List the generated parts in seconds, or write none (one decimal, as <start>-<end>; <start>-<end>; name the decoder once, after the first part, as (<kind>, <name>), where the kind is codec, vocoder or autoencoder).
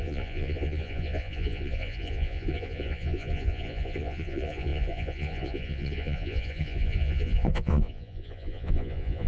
0.0-9.3 (vocoder, Vocos)